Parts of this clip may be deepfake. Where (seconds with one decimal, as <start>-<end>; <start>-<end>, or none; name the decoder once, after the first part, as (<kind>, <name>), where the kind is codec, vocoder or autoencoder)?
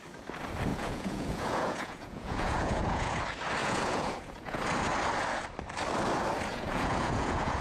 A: 0.7-3.2 (vocoder, Vocos); 3.6-4.6; 6.5-7.6